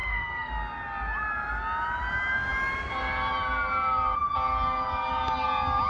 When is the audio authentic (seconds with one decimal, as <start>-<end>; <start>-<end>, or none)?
0.5-5.9